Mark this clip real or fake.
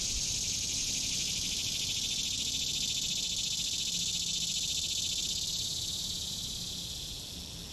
real